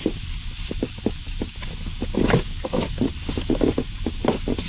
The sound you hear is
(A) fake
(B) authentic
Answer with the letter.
B